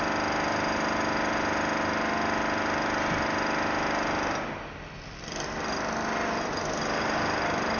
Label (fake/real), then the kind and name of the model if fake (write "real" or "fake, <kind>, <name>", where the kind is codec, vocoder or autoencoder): real